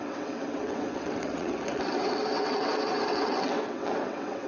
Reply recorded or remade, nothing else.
remade